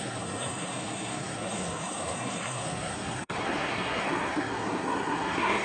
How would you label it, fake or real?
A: fake